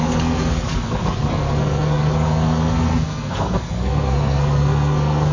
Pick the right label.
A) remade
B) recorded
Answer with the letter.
A